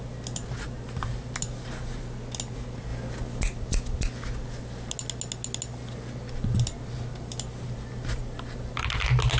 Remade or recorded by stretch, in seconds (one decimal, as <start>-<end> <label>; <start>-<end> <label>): 0.0-9.4 recorded